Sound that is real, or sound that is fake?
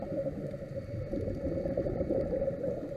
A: real